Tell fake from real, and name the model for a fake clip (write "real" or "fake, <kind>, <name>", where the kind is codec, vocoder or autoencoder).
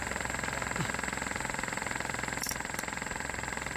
real